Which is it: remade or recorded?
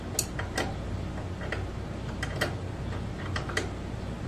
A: recorded